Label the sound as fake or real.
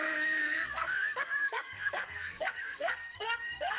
fake